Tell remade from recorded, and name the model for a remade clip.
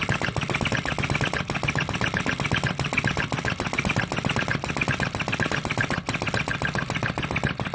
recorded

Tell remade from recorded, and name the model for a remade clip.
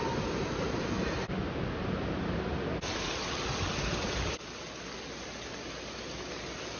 recorded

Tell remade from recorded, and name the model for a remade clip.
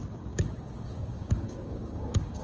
remade, codec, DAC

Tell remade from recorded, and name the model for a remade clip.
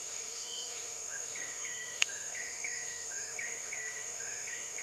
remade, autoencoder, DAC-VAE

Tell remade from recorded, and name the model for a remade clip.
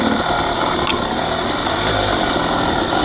recorded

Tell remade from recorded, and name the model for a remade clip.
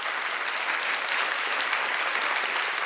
recorded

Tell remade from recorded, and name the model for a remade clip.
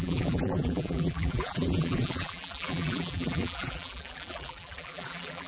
remade, vocoder, BigVGAN v2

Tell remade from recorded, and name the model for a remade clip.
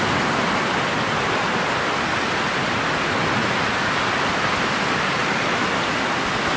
recorded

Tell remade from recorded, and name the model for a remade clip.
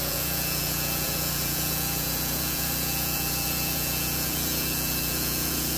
remade, vocoder, Vocos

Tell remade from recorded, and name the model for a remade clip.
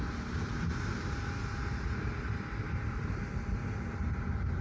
recorded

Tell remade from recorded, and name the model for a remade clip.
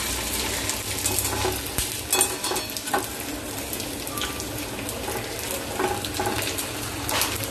recorded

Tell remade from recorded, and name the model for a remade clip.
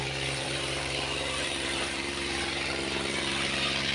remade, vocoder, BigVGAN v2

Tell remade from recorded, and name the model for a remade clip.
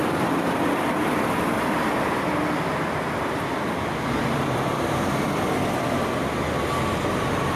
remade, vocoder, BigVGAN v2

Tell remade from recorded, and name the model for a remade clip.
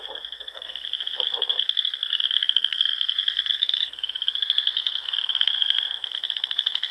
remade, codec, SNAC